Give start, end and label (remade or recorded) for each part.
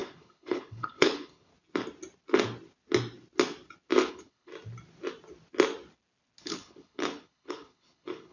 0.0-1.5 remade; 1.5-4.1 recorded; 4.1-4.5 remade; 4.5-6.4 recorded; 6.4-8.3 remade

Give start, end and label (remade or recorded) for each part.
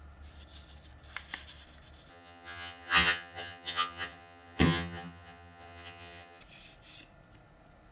0.0-2.1 recorded; 2.1-6.4 remade; 6.4-7.9 recorded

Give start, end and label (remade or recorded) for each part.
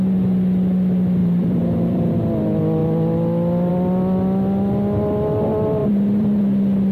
0.0-1.2 recorded; 1.2-2.0 remade; 2.0-5.8 recorded; 5.8-6.4 remade; 6.4-6.9 recorded